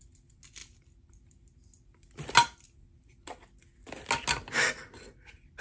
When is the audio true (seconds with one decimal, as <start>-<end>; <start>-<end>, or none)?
0.0-5.6